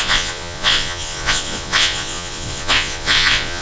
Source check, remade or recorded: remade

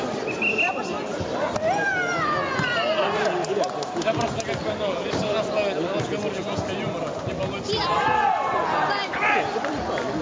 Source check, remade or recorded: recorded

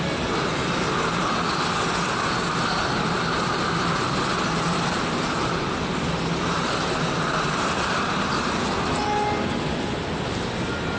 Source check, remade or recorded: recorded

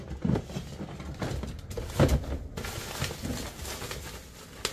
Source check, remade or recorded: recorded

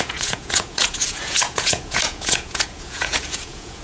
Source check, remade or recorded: remade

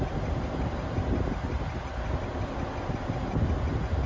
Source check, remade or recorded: recorded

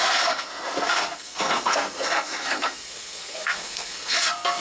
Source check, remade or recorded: remade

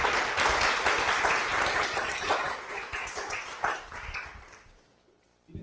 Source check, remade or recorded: recorded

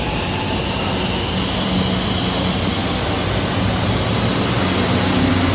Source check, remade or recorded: recorded